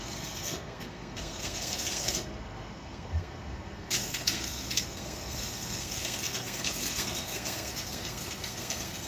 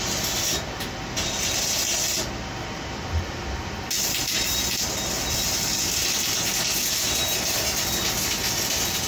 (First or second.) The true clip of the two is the second